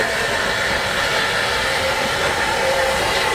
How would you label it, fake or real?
real